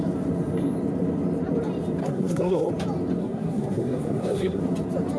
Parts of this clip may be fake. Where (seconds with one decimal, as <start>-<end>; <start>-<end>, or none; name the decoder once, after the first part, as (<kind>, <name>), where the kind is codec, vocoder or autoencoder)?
2.0-2.7 (codec, SNAC); 3.2-4.6